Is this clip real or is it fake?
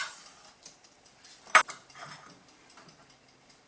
real